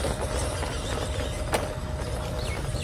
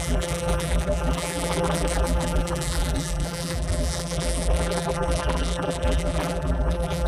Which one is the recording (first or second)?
first